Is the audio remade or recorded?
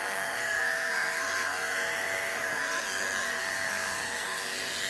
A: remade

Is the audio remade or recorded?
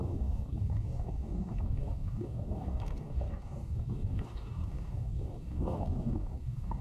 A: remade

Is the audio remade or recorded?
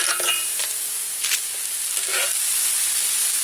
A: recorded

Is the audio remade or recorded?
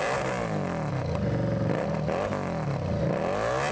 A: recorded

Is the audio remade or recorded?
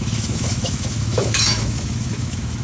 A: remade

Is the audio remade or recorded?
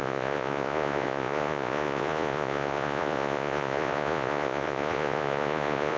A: remade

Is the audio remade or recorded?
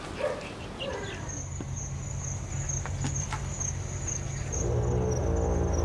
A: recorded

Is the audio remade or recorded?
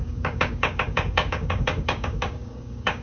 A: remade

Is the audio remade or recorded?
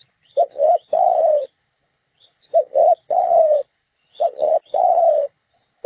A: remade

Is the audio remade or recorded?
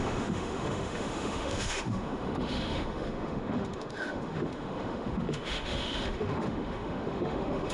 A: remade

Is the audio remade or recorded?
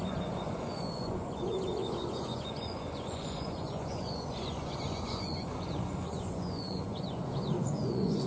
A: remade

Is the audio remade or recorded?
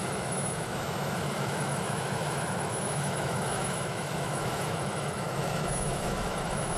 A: remade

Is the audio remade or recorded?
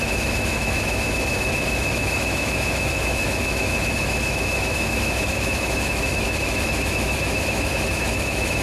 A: remade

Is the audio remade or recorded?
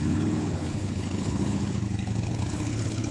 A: remade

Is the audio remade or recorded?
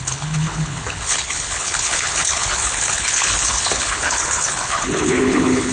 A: remade